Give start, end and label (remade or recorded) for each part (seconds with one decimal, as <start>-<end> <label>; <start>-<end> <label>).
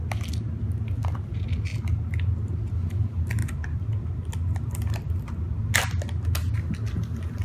0.0-7.4 recorded